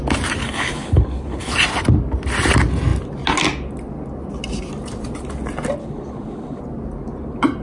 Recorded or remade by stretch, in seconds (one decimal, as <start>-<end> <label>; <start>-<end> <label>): 0.0-0.4 recorded; 0.4-1.5 remade; 1.5-5.8 recorded; 5.8-6.6 remade; 6.6-7.6 recorded